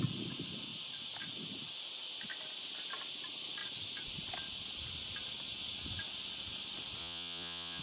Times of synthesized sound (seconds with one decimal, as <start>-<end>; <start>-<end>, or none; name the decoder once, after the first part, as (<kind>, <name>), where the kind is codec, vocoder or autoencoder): 7.0-7.8 (vocoder, Vocos)